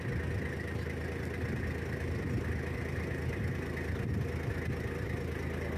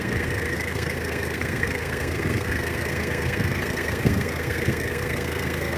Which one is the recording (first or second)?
first